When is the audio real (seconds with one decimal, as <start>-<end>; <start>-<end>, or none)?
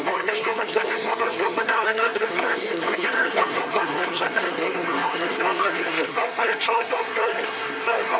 none